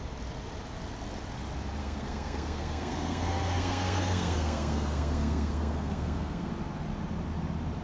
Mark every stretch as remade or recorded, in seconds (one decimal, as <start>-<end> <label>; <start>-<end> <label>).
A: 0.0-1.8 recorded; 1.8-6.5 remade; 6.5-7.8 recorded